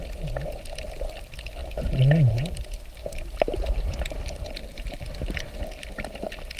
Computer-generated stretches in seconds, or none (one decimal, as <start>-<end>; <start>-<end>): 1.6-5.6